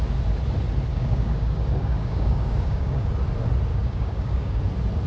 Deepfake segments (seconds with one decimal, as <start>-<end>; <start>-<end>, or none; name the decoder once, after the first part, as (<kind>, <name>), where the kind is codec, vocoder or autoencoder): 0.9-3.1 (codec, DAC); 3.7-4.6